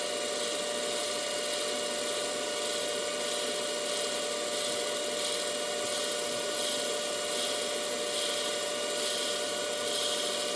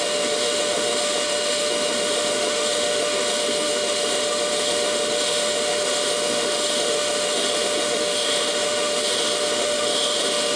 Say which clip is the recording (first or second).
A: first